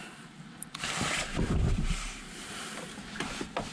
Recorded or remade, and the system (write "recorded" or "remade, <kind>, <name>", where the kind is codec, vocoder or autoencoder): recorded